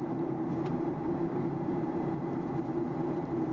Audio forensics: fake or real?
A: fake